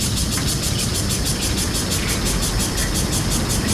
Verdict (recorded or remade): recorded